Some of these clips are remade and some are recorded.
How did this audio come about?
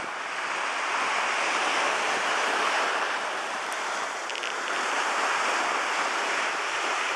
recorded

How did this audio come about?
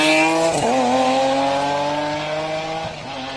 recorded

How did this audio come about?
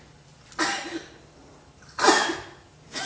recorded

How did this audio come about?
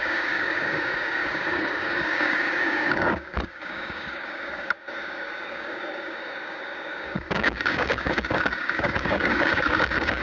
remade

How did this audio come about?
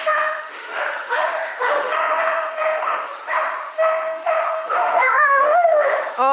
remade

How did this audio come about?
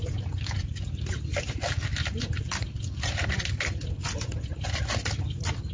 recorded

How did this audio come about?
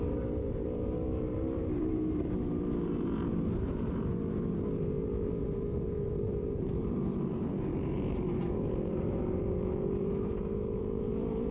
remade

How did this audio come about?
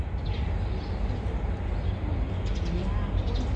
recorded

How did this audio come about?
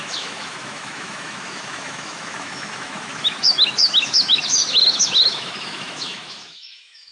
remade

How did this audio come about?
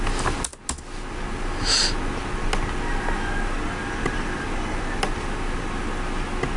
recorded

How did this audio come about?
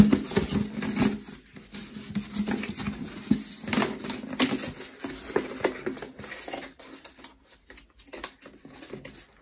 recorded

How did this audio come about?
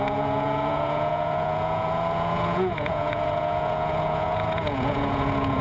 remade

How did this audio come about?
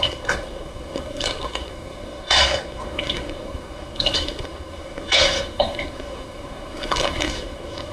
remade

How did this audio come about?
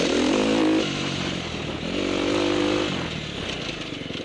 recorded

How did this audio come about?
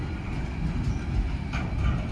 recorded